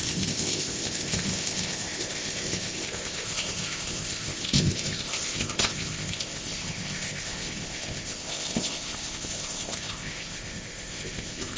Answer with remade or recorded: remade